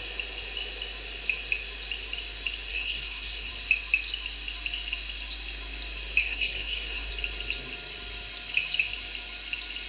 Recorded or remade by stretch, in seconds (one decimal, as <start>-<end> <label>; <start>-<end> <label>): 0.0-2.7 recorded; 2.7-3.5 remade; 3.5-6.2 recorded; 6.2-7.1 remade; 7.1-9.9 recorded